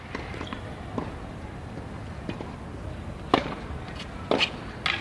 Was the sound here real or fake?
real